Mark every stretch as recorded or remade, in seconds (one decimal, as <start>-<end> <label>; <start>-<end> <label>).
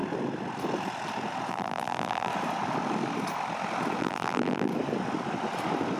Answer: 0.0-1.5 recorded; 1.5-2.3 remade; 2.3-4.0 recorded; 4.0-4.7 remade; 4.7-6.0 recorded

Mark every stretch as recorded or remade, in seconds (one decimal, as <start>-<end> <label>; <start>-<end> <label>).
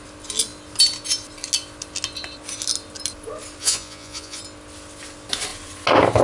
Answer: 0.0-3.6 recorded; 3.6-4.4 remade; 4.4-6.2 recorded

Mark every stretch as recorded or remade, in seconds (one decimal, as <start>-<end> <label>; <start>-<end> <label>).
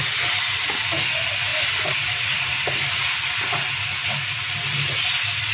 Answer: 0.0-5.5 recorded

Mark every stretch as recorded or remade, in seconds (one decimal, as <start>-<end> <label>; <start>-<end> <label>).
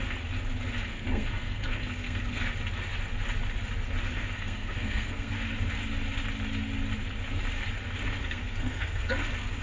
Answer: 0.0-0.9 recorded; 0.9-2.4 remade; 2.4-4.1 recorded; 4.1-5.3 remade; 5.3-8.2 recorded; 8.2-9.2 remade; 9.2-9.6 recorded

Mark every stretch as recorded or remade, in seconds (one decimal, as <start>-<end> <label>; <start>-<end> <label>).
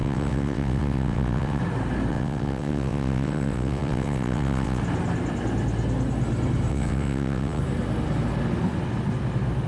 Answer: 0.0-1.6 remade; 1.6-2.1 recorded; 2.1-4.8 remade; 4.8-6.7 recorded; 6.7-7.6 remade; 7.6-9.7 recorded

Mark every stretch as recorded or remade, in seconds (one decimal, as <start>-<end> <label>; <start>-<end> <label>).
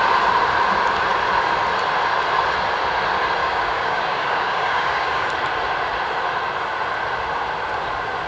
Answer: 0.0-3.4 recorded; 3.4-5.3 remade; 5.3-8.3 recorded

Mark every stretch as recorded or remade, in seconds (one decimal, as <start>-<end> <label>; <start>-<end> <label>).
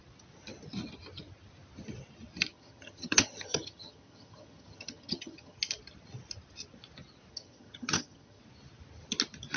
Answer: 0.0-2.5 recorded; 2.5-5.6 remade; 5.6-7.3 recorded; 7.3-8.4 remade; 8.4-9.6 recorded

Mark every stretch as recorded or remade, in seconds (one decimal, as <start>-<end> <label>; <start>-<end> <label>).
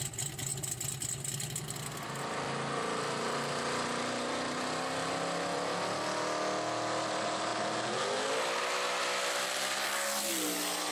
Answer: 0.0-10.9 recorded